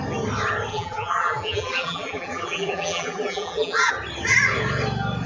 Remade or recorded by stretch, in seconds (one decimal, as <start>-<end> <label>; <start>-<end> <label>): 0.0-0.7 recorded; 0.7-3.9 remade; 3.9-5.3 recorded